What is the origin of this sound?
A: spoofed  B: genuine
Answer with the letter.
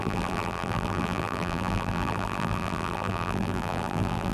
A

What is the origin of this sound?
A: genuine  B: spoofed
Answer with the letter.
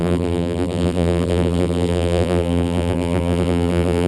B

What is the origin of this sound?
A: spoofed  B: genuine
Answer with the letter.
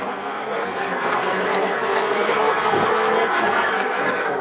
A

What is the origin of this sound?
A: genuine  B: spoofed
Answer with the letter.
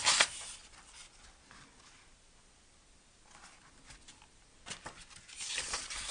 A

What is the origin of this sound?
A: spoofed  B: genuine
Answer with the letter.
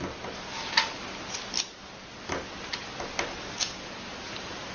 B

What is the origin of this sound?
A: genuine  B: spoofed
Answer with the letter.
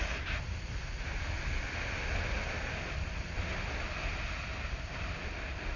A